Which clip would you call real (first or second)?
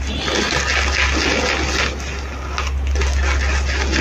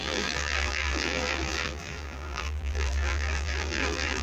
first